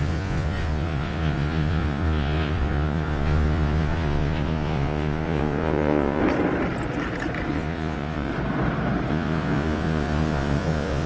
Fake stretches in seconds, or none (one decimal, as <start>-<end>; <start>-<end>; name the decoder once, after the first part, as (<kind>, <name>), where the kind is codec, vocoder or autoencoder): 0.0-6.2 (vocoder, Vocos); 7.5-8.3; 9.1-11.1